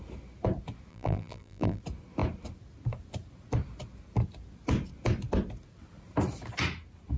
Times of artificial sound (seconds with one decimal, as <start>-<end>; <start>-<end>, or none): 0.9-1.8